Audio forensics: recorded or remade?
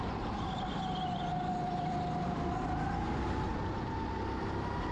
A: recorded